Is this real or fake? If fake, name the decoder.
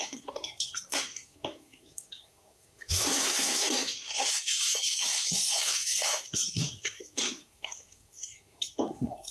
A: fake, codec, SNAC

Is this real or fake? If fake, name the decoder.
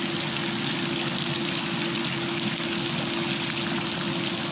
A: real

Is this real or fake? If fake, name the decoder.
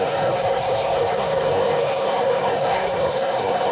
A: fake, codec, SNAC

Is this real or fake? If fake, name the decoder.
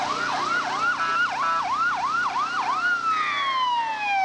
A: real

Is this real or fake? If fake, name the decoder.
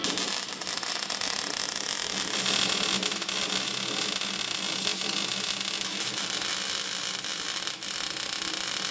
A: real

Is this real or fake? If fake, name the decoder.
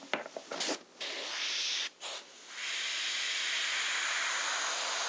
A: real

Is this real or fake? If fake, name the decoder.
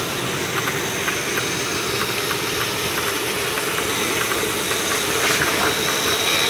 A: real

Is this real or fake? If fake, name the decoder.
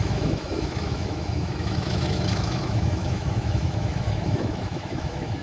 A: fake, autoencoder, DAC-VAE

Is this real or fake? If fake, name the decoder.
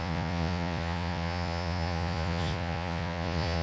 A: fake, vocoder, Vocos